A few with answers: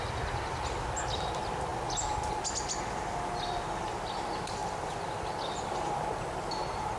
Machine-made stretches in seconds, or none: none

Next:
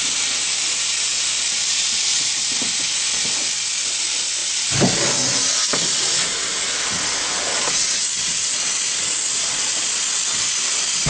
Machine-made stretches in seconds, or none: none

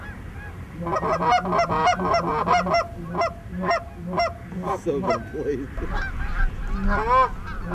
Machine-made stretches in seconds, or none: none